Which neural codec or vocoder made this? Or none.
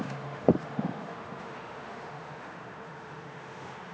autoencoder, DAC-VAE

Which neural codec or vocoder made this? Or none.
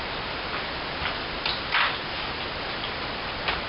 none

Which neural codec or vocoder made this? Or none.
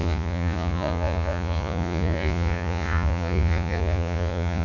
vocoder, Vocos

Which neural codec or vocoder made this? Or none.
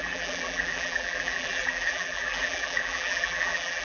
vocoder, BigVGAN v2